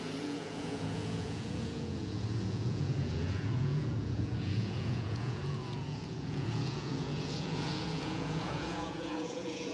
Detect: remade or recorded remade